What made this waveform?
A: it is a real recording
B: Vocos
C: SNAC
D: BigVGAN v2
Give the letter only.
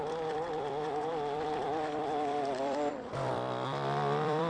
D